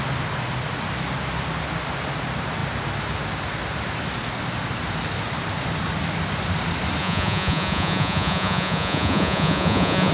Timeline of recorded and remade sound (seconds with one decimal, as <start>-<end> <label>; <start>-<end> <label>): 0.0-7.0 recorded; 7.0-10.1 remade